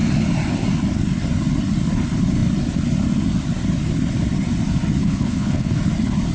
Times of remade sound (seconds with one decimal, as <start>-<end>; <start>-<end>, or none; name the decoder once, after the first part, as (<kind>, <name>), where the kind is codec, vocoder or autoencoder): 5.0-5.8 (codec, HILCodec)